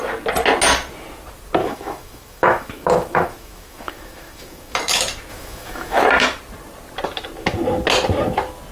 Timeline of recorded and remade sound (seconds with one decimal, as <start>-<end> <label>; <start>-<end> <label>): 0.0-1.6 recorded; 1.6-4.8 remade; 4.8-5.3 recorded; 5.3-6.1 remade; 6.1-8.7 recorded